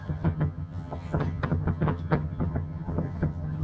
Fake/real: fake